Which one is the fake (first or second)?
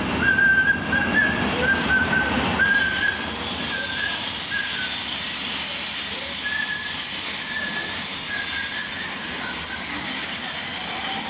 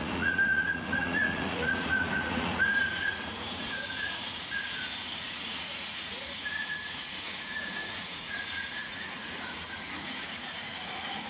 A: second